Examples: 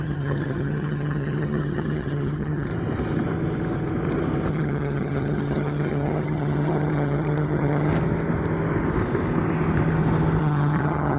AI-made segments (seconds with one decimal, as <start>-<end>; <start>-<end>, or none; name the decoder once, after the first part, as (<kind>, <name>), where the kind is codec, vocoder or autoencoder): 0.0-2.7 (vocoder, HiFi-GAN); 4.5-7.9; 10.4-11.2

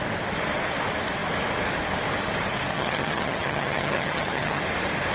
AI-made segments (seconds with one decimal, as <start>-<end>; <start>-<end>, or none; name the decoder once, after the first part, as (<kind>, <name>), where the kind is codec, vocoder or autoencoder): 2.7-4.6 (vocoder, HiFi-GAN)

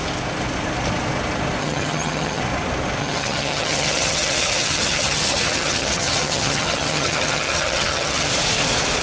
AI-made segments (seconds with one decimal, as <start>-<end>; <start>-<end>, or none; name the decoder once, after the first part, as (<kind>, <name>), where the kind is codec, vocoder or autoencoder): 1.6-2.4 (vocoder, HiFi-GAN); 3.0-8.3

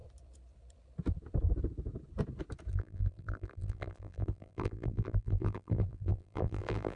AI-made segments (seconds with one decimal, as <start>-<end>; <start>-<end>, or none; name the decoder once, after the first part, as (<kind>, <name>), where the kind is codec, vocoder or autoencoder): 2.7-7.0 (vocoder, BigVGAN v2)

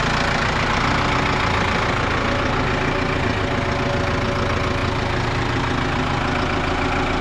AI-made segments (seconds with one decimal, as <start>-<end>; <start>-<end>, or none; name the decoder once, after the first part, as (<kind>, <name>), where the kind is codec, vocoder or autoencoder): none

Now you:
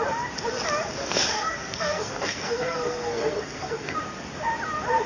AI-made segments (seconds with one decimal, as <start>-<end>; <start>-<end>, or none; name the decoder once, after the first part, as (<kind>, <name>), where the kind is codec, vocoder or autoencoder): 1.0-4.0 (codec, SNAC)